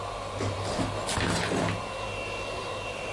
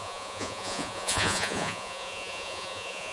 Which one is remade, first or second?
second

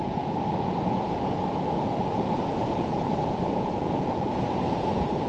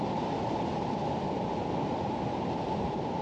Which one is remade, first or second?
first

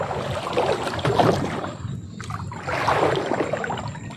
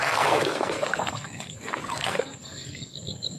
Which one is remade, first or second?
second